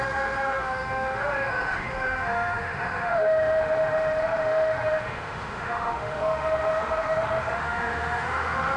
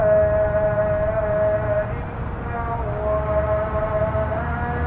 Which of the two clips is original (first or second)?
second